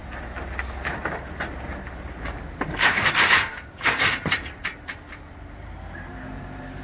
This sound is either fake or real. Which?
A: fake